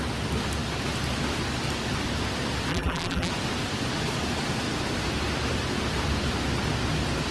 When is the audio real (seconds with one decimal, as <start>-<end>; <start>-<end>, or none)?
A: 0.0-2.7; 3.3-7.3